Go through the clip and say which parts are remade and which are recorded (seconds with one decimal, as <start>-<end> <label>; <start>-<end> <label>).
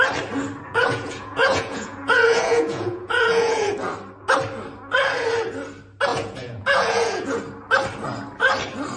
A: 0.0-0.7 recorded; 0.7-3.7 remade; 3.7-6.1 recorded; 6.1-7.4 remade; 7.4-9.0 recorded